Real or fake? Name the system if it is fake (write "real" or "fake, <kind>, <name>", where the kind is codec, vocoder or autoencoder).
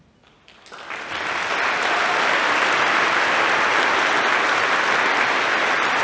real